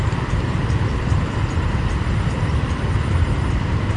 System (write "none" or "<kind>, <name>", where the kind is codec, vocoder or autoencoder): none